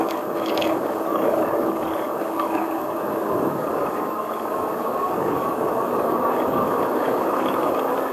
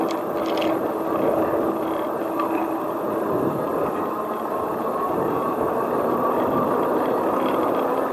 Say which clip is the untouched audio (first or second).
second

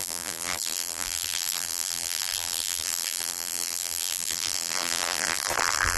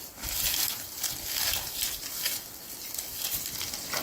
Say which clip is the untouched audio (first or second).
second